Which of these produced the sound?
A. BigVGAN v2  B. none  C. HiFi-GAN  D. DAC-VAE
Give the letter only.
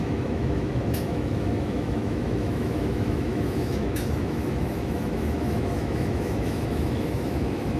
D